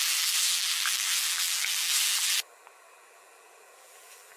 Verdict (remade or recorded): remade